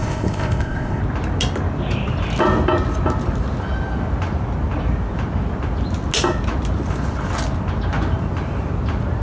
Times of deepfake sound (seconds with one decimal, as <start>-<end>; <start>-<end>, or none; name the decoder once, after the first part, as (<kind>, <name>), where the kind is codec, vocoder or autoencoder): 0.0-1.0 (codec, ZipCodec)